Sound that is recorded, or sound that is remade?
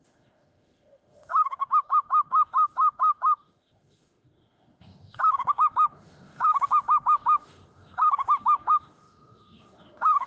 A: remade